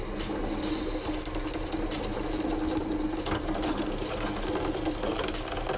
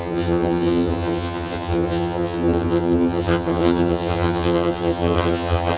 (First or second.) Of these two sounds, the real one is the first